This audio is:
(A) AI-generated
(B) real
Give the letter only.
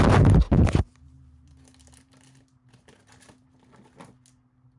B